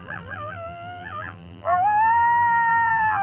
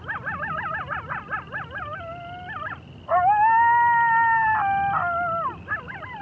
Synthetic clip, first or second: first